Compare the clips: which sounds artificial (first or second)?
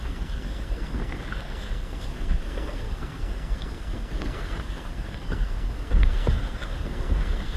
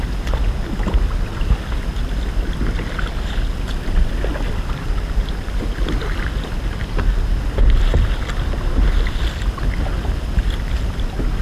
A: first